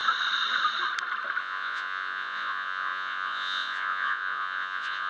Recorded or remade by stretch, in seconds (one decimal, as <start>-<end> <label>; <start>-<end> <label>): 0.0-1.4 recorded; 1.4-5.1 remade